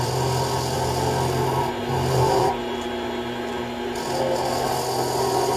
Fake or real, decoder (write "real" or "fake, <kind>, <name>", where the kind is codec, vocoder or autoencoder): real